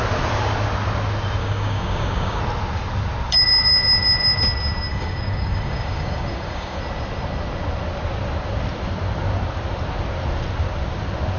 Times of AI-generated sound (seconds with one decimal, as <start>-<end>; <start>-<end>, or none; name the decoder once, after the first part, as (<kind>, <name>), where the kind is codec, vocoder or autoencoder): 1.4-2.4 (codec, DAC); 4.9-6.8